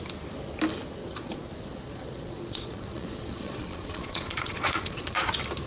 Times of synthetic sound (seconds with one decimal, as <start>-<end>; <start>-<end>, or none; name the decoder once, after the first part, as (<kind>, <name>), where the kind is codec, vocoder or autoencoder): 1.0-1.5 (vocoder, Vocos); 1.9-5.3